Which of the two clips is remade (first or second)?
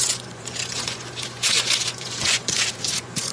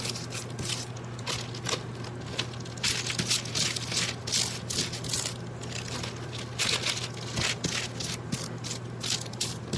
first